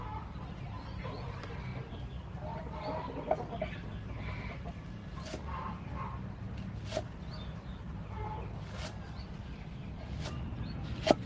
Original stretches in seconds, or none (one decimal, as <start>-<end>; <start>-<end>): 0.0-11.3

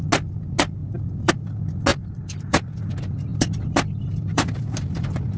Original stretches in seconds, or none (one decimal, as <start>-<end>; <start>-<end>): 0.0-0.8; 1.3-1.9; 2.8-3.3

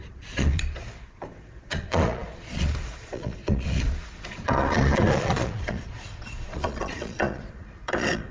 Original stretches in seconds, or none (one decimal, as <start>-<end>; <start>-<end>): none

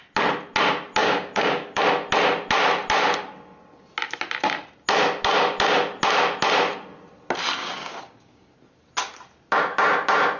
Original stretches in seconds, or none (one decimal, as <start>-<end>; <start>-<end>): 0.0-1.0; 1.8-7.6; 8.5-10.4

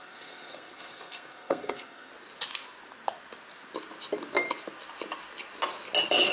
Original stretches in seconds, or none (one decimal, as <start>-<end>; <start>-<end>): 2.1-6.3

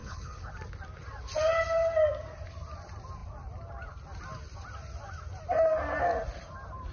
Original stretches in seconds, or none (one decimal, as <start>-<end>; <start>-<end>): 0.5-6.9

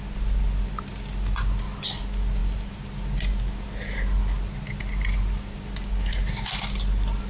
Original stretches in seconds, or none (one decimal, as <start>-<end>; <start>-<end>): 0.0-7.3

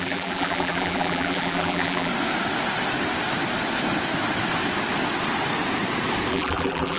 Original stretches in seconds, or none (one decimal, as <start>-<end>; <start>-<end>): 2.1-6.3